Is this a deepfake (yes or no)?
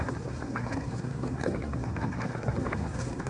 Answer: yes